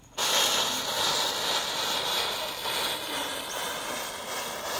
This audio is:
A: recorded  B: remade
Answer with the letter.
A